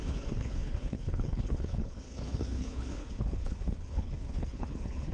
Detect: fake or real fake